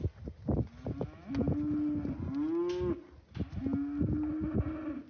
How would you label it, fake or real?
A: real